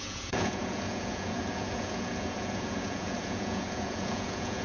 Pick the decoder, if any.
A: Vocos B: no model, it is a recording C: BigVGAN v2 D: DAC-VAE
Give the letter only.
A